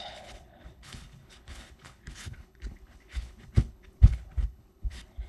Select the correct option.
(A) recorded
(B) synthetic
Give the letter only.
B